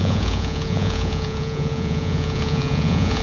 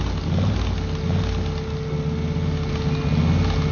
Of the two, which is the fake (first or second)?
first